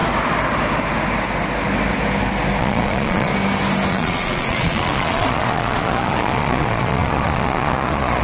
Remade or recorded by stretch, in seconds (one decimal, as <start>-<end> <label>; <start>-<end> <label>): 0.0-2.6 recorded; 2.6-3.3 remade; 3.3-3.9 recorded; 3.9-8.2 remade